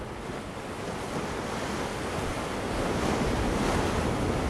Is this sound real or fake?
real